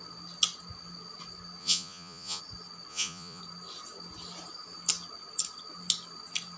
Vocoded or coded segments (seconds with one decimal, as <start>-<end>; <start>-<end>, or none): 1.6-2.4; 2.9-3.4